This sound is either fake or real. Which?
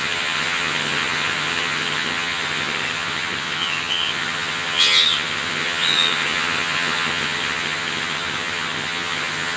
fake